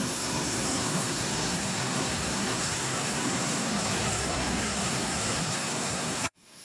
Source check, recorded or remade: remade